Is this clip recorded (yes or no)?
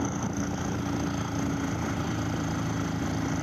yes